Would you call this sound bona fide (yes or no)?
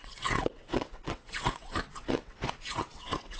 no